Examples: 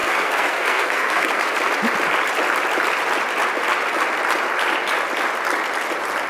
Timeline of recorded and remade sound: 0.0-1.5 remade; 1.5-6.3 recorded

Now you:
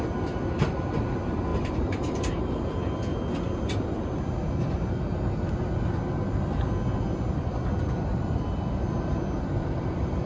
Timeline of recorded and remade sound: 0.0-3.1 remade; 3.1-7.8 recorded; 7.8-10.3 remade